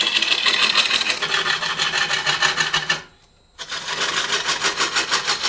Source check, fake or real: real